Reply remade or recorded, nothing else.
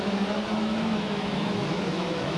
remade